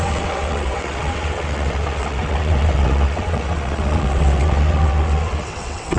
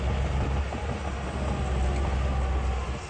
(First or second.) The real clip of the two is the second